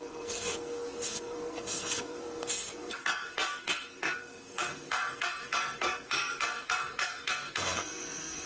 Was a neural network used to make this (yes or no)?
yes